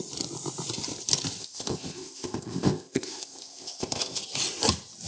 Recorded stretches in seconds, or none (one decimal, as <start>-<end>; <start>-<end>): 0.0-1.4; 4.2-5.1